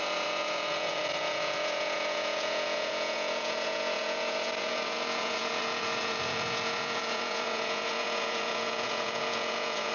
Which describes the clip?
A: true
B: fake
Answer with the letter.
B